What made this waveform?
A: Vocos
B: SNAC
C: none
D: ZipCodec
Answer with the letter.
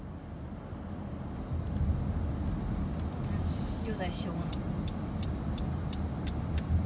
C